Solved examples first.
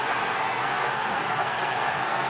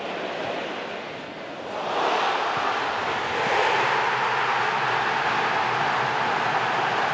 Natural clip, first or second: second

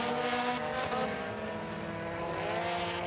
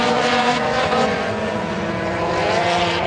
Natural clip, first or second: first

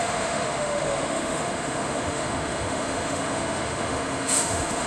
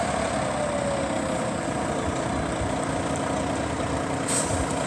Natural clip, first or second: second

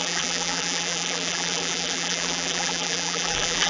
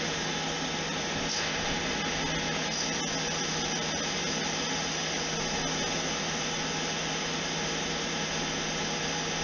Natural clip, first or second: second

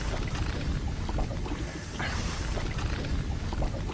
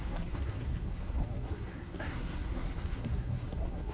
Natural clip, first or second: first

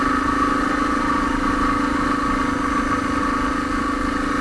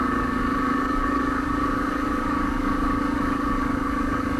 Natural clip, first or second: first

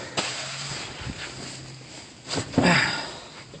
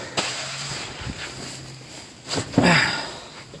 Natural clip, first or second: second